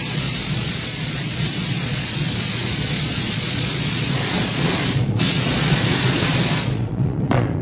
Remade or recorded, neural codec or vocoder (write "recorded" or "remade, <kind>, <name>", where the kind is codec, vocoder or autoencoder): remade, vocoder, Vocos